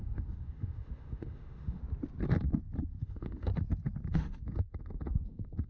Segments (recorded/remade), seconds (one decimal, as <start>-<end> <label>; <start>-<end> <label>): 0.0-1.8 remade; 1.8-3.0 recorded; 3.0-3.5 remade; 3.5-4.1 recorded; 4.1-5.7 remade